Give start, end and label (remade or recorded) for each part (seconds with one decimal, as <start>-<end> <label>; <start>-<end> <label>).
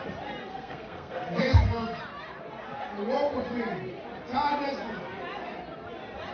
0.0-0.4 recorded; 0.4-2.0 remade; 2.0-6.3 recorded